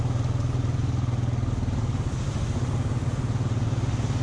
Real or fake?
real